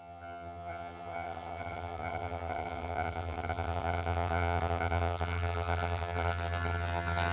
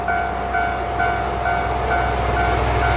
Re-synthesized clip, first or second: first